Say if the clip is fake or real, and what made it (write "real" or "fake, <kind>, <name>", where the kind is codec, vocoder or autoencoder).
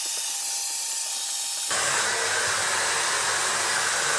real